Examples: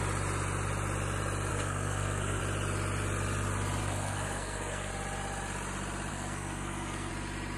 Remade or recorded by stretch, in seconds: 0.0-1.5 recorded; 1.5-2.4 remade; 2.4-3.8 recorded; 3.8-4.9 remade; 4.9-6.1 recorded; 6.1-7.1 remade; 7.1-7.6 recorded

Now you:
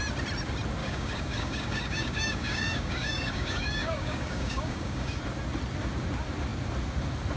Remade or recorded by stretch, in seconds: 0.0-0.8 recorded; 0.8-5.2 remade; 5.2-7.4 recorded

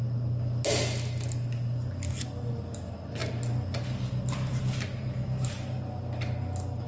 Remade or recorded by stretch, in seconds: 0.0-6.9 recorded

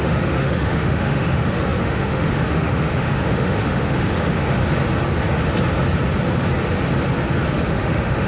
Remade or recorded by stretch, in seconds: 0.0-4.6 remade; 4.6-7.5 recorded; 7.5-8.3 remade

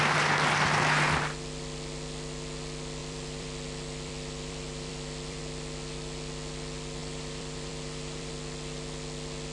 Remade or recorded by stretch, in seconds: 0.0-3.0 recorded; 3.0-5.4 remade; 5.4-7.0 recorded; 7.0-8.3 remade; 8.3-9.5 recorded